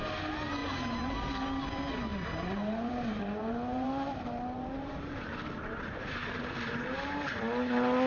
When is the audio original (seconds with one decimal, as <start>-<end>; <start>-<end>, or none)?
0.0-0.6; 1.3-2.1; 6.4-8.1